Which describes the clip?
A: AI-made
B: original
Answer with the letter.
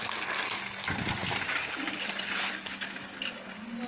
B